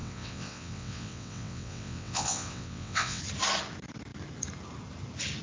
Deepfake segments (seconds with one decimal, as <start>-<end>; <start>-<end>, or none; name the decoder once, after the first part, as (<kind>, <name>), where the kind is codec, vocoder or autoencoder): 0.0-3.2 (vocoder, WaveNeXt)

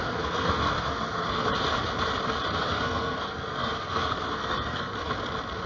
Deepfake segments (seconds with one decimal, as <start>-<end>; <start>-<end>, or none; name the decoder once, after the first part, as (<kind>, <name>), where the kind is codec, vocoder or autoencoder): 0.0-1.4 (codec, SNAC); 2.5-5.0

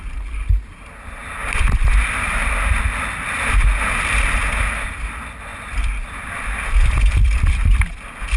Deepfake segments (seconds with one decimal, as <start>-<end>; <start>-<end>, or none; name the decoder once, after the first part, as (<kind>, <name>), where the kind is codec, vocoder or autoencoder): 1.4-1.9 (vocoder, BigVGAN v2); 5.5-7.8

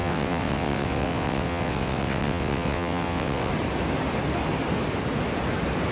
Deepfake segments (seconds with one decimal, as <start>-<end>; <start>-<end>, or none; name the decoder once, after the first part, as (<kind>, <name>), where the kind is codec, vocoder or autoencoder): 0.0-3.5 (vocoder, WaveNeXt)

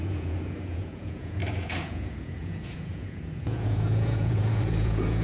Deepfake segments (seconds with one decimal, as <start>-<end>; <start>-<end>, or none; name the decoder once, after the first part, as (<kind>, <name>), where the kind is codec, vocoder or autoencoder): 0.0-5.2 (vocoder, Vocos)

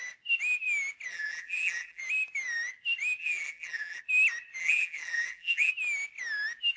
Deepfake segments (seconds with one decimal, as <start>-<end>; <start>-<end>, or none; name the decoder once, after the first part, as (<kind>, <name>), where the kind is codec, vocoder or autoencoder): 1.1-2.0 (vocoder, BigVGAN v2); 3.2-4.0; 4.6-5.7